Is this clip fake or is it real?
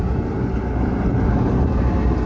real